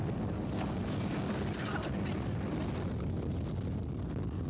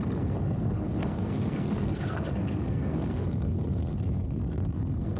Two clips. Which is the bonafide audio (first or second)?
first